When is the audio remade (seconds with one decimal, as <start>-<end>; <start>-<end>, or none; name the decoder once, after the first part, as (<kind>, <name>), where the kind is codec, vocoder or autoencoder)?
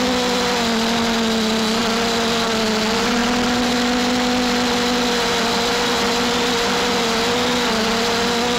none